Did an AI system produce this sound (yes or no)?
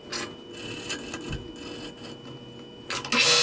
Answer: no